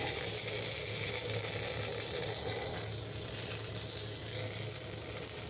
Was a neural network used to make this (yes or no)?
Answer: no